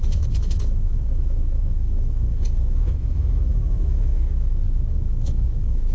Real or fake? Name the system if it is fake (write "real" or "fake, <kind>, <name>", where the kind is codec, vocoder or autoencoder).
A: fake, autoencoder, DAC-VAE